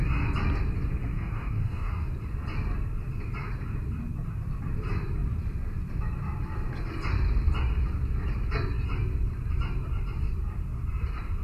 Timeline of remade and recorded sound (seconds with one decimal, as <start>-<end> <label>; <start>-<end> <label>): 0.0-1.1 recorded; 1.1-1.9 remade; 1.9-11.4 recorded